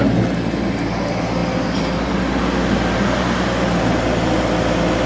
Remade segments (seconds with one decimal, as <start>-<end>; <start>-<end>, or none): none